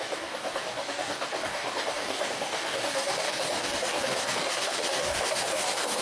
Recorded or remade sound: remade